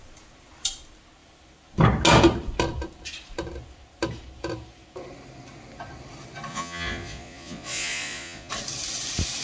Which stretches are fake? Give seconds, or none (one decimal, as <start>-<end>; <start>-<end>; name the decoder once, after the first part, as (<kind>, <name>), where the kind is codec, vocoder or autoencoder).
6.5-8.5 (vocoder, Vocos)